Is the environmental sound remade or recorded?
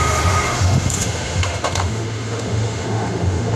remade